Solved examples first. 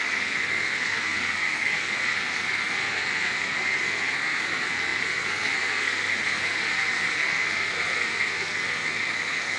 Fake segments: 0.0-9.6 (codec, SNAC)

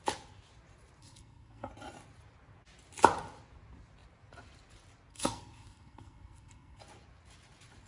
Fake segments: 1.0-1.7 (codec, SNAC); 5.1-6.8

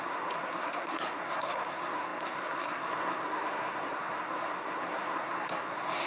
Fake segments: 0.0-6.1 (codec, SNAC)

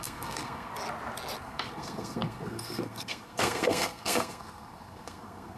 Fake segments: 0.0-0.7 (codec, SNAC); 1.4-5.6